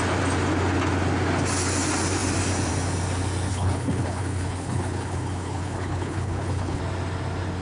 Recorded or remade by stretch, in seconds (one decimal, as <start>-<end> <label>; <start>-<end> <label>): 0.0-3.5 recorded; 3.5-6.8 remade; 6.8-7.6 recorded